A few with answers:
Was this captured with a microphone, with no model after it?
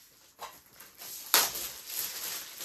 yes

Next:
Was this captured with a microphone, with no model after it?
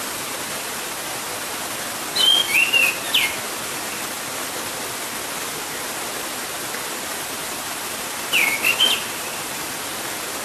yes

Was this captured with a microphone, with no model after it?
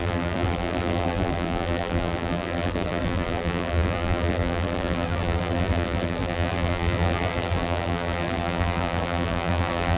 no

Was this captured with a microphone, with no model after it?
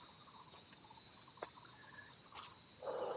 yes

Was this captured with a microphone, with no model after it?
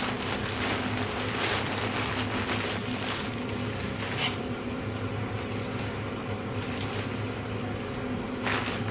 yes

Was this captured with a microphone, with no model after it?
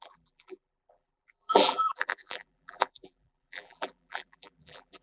no